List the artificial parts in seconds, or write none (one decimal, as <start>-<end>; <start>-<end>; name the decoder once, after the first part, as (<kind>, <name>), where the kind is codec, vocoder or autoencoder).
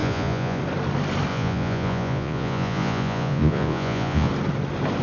0.0-0.6 (vocoder, Vocos); 1.3-4.3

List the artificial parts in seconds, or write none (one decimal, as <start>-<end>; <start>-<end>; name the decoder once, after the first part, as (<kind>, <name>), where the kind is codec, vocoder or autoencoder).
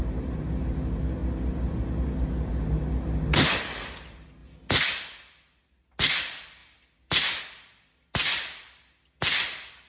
none